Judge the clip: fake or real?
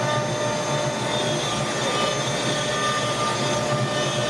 real